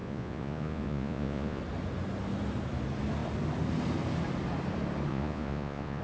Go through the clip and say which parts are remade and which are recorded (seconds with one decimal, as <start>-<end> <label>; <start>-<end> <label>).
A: 0.0-1.6 remade; 1.6-5.1 recorded; 5.1-6.0 remade